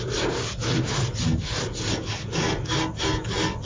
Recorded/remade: recorded